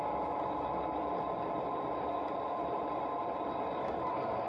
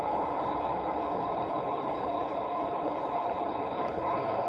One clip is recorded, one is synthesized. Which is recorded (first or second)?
first